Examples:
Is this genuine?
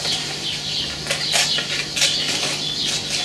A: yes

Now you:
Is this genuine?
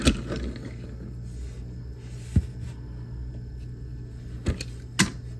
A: yes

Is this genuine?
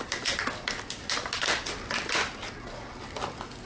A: yes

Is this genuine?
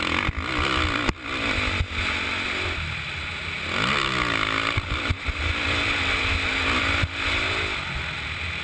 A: yes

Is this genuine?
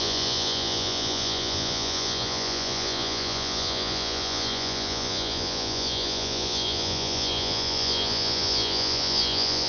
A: no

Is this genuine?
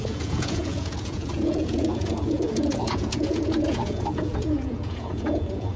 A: no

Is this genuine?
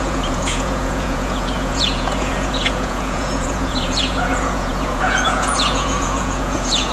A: no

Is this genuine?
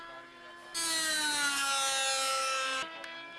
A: yes